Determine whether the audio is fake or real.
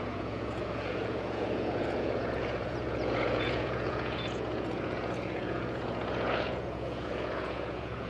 fake